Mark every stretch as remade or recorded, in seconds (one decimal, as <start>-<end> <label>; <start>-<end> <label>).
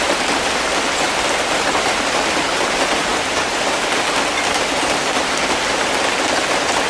0.0-6.9 recorded